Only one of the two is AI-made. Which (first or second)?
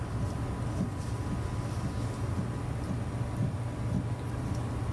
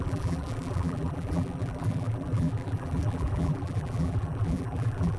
second